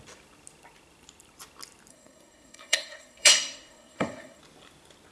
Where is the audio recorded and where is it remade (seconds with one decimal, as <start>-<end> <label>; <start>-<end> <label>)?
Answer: 0.0-1.9 recorded; 1.9-4.4 remade; 4.4-5.1 recorded